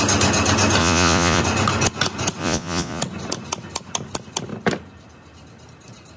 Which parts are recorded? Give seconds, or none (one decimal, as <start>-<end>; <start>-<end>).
0.0-0.8; 1.4-2.4; 3.0-6.2